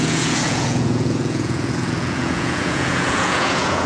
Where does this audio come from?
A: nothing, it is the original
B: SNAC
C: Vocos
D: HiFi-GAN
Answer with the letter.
C